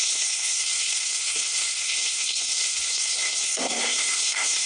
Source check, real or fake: fake